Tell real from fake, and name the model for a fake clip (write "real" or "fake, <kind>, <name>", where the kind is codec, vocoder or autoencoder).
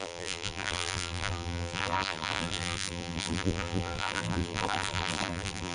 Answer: fake, vocoder, BigVGAN v2